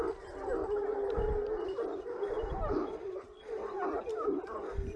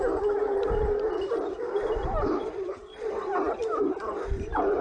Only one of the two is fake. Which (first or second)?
second